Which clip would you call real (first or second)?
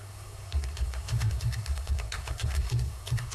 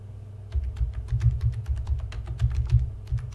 second